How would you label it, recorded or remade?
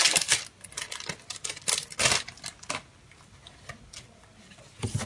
recorded